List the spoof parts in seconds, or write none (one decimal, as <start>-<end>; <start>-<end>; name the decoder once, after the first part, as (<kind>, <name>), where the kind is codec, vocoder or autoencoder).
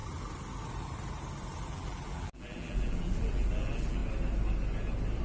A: 1.7-4.0 (vocoder, BigVGAN v2)